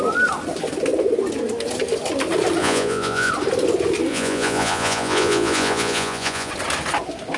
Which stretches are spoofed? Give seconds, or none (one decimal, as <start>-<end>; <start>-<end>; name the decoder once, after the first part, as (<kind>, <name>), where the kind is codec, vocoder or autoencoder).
2.6-3.3 (vocoder, Vocos); 4.1-6.5